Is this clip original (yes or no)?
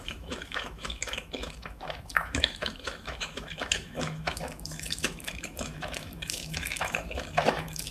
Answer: no